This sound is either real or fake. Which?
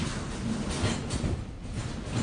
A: real